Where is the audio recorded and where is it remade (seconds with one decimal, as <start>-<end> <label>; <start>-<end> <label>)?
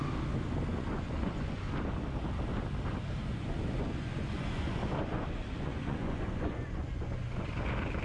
0.0-0.7 recorded; 0.7-1.6 remade; 1.6-3.2 recorded; 3.2-7.5 remade; 7.5-8.0 recorded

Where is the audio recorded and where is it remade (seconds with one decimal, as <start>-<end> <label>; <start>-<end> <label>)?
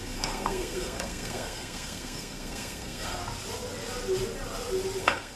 0.0-3.2 remade; 3.2-5.0 recorded; 5.0-5.4 remade